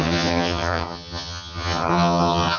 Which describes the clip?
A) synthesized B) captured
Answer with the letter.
A